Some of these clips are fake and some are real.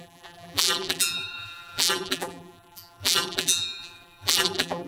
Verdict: fake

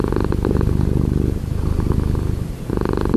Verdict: real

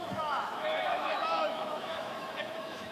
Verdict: fake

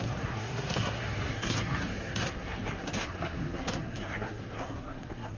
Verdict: fake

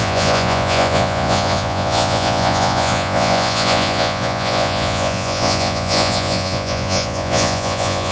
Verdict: fake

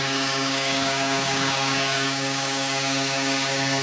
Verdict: fake